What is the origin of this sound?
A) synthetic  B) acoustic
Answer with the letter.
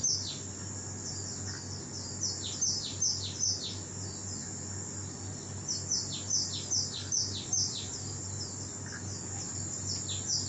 B